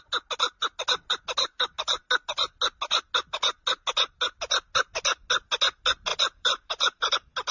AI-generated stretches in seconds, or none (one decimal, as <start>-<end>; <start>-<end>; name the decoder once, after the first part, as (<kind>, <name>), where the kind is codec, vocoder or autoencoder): 6.1-7.0 (vocoder, BigVGAN v2)